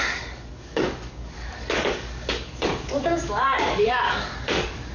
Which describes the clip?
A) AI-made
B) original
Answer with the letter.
A